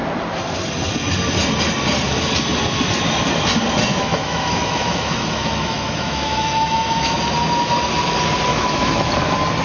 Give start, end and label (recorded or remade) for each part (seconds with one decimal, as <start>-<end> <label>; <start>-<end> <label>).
0.0-3.9 recorded; 3.9-7.2 remade; 7.2-8.5 recorded; 8.5-9.1 remade; 9.1-9.6 recorded

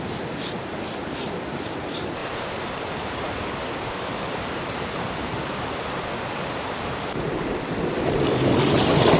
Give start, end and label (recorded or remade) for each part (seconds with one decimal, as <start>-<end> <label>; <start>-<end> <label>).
0.0-2.2 recorded; 2.2-7.5 remade; 7.5-9.2 recorded

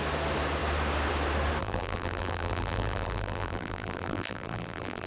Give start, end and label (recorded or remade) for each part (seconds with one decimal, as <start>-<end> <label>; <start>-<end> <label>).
0.0-1.6 recorded; 1.6-5.1 remade

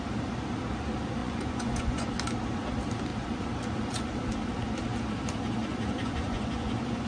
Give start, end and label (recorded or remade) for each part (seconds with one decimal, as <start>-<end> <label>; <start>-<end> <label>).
0.0-1.2 recorded; 1.2-2.1 remade; 2.1-5.6 recorded; 5.6-7.1 remade

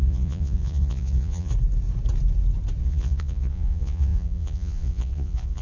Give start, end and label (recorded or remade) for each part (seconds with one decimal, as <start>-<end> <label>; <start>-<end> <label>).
0.0-1.5 remade; 1.5-2.8 recorded; 2.8-5.6 remade

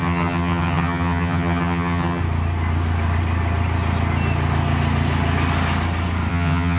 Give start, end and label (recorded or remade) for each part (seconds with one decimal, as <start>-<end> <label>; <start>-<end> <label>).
0.0-2.2 remade; 2.2-6.3 recorded; 6.3-6.8 remade